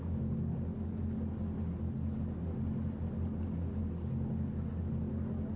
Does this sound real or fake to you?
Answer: real